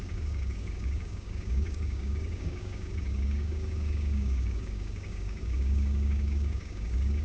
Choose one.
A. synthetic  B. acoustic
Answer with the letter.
A